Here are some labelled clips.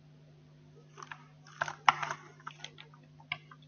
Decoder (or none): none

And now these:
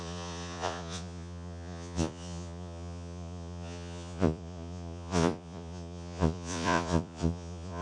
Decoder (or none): vocoder, Vocos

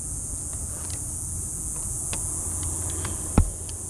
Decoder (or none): none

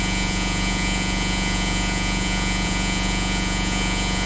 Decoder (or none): vocoder, Vocos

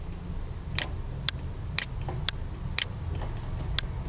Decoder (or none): none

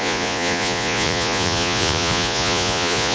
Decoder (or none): vocoder, Vocos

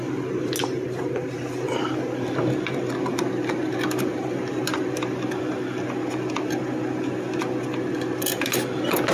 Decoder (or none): none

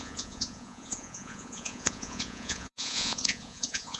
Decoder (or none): vocoder, Vocos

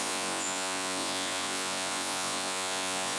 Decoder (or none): vocoder, Vocos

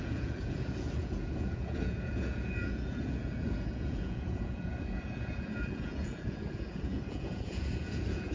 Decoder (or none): vocoder, Vocos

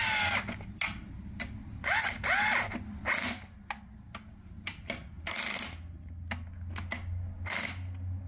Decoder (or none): none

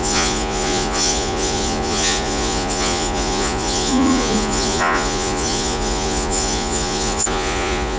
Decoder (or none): vocoder, Vocos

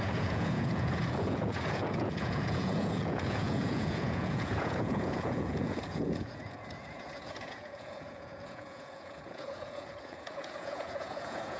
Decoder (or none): vocoder, Vocos